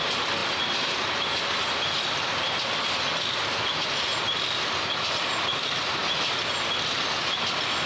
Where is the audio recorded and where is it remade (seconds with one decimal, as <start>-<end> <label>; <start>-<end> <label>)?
0.0-7.9 recorded